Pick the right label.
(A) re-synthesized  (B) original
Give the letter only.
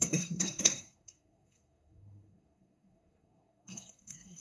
A